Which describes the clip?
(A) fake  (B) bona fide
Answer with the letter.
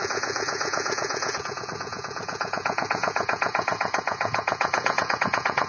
A